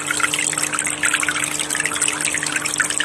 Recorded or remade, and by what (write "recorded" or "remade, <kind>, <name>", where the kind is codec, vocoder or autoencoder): recorded